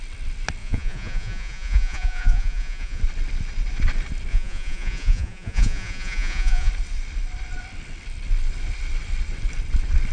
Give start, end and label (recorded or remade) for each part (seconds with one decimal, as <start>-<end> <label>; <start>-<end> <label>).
0.0-0.6 recorded; 0.6-3.0 remade; 3.0-4.3 recorded; 4.3-6.7 remade; 6.7-10.1 recorded